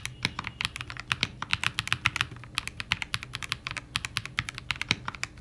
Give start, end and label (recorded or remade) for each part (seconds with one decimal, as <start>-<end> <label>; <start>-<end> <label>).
0.0-5.4 recorded